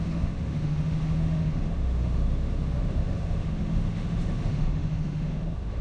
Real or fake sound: fake